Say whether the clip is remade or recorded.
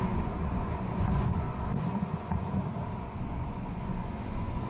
remade